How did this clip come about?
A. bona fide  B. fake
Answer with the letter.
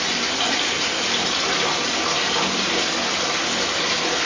A